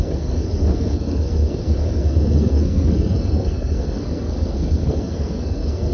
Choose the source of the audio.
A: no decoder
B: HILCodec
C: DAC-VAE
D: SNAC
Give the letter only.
D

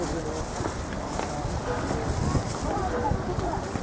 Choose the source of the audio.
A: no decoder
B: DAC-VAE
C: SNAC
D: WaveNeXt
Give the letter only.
A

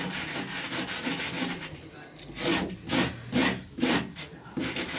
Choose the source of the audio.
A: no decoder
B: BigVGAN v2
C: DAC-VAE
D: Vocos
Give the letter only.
A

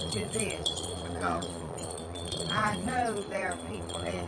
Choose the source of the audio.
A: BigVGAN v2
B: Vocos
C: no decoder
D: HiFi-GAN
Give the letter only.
B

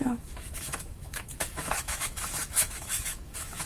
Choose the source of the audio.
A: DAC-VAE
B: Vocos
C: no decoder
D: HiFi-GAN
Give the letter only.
A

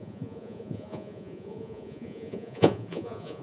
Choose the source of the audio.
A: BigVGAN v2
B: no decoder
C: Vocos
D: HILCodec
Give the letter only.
C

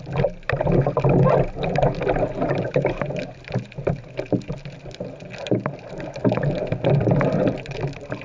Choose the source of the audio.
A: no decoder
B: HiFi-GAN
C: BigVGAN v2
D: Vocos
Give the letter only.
A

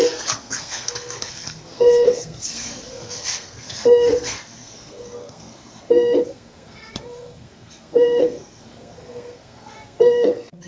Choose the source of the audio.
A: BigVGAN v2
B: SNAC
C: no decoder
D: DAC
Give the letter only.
B